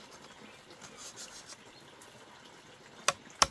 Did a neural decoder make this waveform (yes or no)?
no